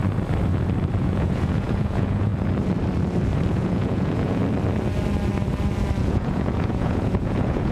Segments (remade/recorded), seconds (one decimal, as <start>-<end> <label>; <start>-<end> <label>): 0.0-1.0 recorded; 1.0-2.3 remade; 2.3-3.5 recorded; 3.5-4.4 remade; 4.4-6.0 recorded; 6.0-7.7 remade